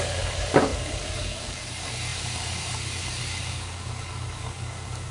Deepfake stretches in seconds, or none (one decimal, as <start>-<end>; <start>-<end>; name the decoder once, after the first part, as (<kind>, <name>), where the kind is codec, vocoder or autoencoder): 0.0-5.1 (codec, DAC)